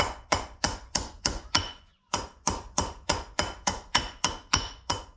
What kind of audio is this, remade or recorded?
remade